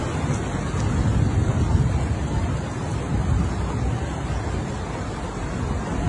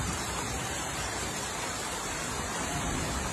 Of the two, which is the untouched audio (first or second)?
first